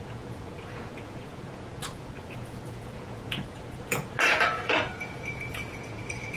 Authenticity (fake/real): fake